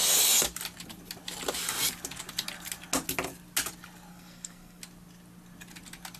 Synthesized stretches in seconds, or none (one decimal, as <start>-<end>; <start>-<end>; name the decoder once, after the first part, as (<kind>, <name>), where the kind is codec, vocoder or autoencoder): 4.1-4.8 (codec, SNAC)